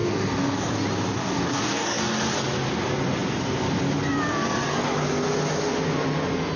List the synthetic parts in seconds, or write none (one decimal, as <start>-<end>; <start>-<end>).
0.0-0.7; 1.2-2.0